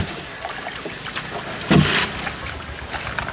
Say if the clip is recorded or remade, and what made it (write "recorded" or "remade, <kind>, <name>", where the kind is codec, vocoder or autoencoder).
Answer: recorded